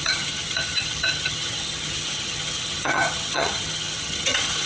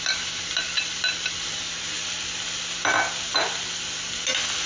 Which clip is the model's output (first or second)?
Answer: first